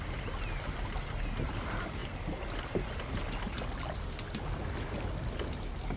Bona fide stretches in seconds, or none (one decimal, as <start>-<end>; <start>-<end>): 0.0-6.0